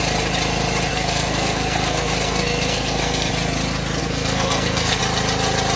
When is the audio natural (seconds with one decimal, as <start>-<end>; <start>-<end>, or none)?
0.0-0.9; 3.3-4.0; 5.0-5.8